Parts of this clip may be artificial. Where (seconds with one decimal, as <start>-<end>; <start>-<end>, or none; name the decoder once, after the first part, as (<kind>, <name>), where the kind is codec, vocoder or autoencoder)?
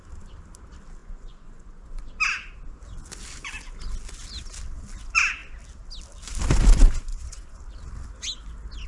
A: 1.0-2.0 (vocoder, Vocos); 7.1-7.6